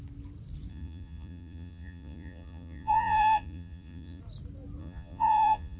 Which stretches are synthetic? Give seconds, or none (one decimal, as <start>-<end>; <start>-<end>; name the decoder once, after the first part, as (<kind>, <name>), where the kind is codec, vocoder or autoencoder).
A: 0.7-4.2 (vocoder, Vocos); 4.8-5.8